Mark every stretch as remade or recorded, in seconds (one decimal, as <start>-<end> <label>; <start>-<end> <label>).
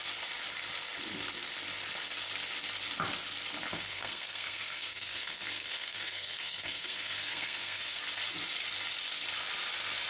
0.0-3.7 recorded; 3.7-8.0 remade; 8.0-10.1 recorded